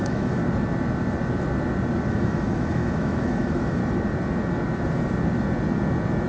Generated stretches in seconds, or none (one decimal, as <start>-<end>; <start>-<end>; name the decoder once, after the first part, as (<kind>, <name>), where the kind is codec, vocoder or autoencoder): 0.0-0.4 (autoencoder, DAC-VAE); 2.1-3.8